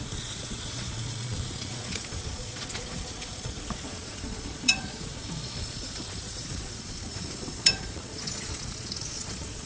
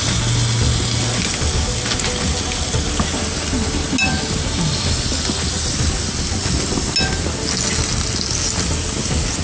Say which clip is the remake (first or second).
first